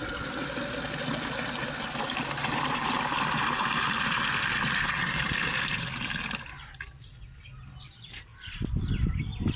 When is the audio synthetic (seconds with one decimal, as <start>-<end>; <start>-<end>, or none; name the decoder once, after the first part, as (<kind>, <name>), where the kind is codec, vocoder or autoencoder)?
none